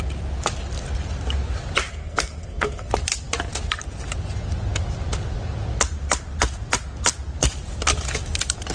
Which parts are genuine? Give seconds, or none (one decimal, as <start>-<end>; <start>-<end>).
0.0-1.9; 2.9-8.7